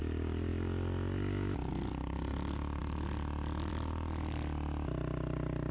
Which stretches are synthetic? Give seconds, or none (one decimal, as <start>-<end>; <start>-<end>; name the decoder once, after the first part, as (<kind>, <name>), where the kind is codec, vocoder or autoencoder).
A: none